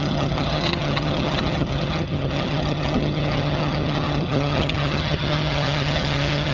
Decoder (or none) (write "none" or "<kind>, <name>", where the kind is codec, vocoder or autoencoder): vocoder, HiFi-GAN